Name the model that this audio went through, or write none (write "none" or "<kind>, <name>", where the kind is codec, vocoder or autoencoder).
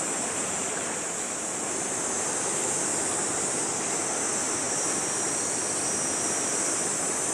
none